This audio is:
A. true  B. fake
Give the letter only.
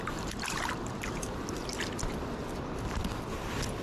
A